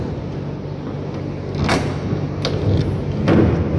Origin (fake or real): real